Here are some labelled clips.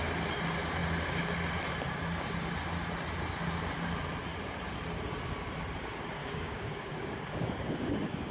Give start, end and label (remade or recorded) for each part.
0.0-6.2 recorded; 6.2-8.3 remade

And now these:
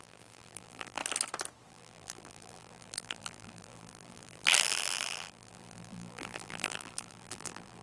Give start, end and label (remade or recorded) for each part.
0.0-1.0 remade; 1.0-1.7 recorded; 1.7-7.8 remade